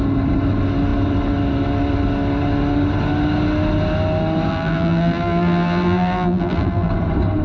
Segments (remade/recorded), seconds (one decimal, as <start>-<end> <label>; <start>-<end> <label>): 0.0-4.5 recorded; 4.5-6.9 remade; 6.9-7.4 recorded